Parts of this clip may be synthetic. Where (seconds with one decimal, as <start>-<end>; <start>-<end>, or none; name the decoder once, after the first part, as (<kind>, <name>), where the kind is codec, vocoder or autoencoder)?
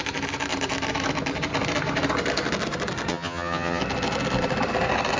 3.1-3.8 (vocoder, HiFi-GAN)